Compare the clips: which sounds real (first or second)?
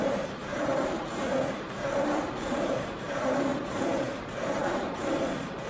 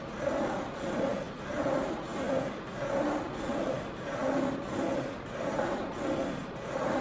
second